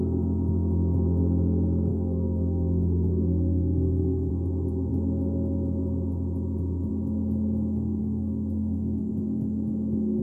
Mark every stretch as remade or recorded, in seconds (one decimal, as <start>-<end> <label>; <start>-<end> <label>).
0.0-1.9 recorded; 1.9-4.3 remade; 4.3-8.0 recorded; 8.0-9.1 remade; 9.1-10.2 recorded